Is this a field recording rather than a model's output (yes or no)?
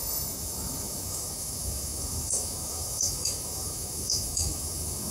no